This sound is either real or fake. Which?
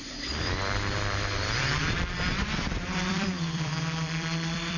fake